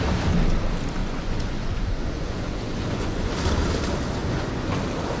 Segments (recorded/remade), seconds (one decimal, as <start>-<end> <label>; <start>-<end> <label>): 0.0-1.0 recorded; 1.0-3.3 remade; 3.3-4.2 recorded; 4.2-4.8 remade; 4.8-5.2 recorded